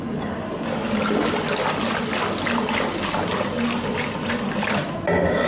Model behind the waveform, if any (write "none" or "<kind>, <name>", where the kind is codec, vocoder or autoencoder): none